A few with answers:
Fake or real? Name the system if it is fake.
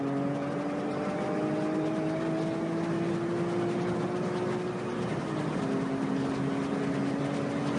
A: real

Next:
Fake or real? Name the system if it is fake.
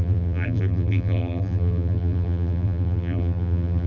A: fake, vocoder, BigVGAN v2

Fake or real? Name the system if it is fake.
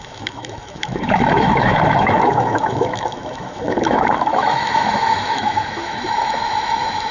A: fake, autoencoder, DAC-VAE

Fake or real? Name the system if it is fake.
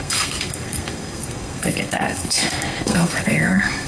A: fake, codec, SNAC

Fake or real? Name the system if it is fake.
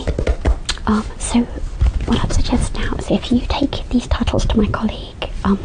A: real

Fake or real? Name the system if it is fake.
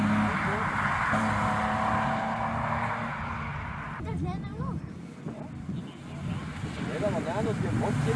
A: real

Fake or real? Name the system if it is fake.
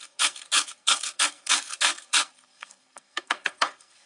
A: fake, codec, SNAC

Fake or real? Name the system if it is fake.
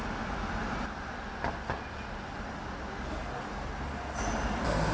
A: real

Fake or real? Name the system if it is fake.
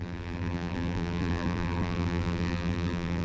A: fake, vocoder, BigVGAN v2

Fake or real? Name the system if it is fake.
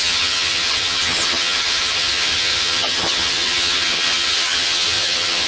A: fake, vocoder, HiFi-GAN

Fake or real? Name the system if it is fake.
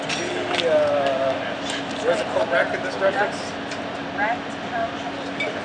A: real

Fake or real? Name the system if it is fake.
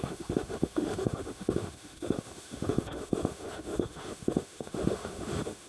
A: fake, autoencoder, DAC-VAE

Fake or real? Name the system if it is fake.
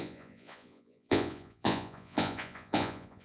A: fake, vocoder, Vocos